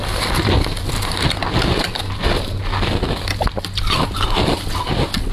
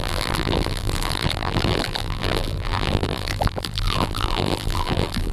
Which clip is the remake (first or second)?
second